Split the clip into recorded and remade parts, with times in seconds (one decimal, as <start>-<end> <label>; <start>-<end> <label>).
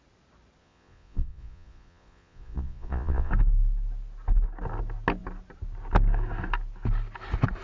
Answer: 0.0-0.6 recorded; 0.6-3.3 remade; 3.3-7.6 recorded